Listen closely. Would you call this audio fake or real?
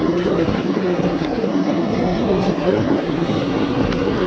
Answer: fake